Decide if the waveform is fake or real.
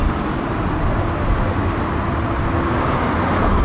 real